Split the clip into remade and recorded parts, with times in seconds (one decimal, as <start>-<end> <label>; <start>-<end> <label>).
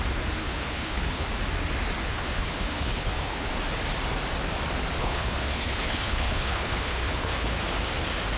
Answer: 0.0-0.4 recorded; 0.4-1.3 remade; 1.3-2.0 recorded; 2.0-3.5 remade; 3.5-5.0 recorded; 5.0-7.6 remade; 7.6-8.4 recorded